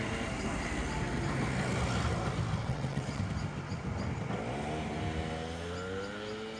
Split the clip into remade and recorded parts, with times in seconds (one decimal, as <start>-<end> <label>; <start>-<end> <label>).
0.0-2.6 recorded; 2.6-3.2 remade; 3.2-6.6 recorded